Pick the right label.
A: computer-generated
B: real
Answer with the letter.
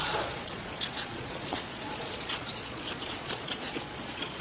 A